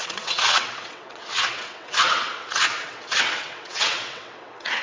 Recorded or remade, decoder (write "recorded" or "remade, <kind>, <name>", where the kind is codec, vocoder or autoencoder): remade, vocoder, WaveNeXt